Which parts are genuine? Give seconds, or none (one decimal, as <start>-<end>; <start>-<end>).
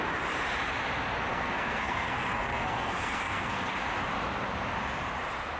0.0-1.3; 3.7-5.6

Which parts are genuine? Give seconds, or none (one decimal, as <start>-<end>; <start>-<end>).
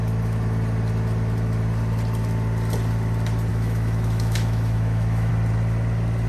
0.0-3.5; 5.3-6.3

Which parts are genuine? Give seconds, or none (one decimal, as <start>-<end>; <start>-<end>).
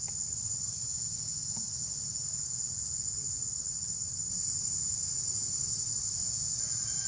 0.0-0.8; 3.4-6.2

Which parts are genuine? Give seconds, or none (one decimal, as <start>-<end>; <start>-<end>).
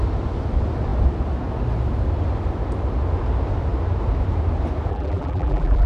0.0-4.9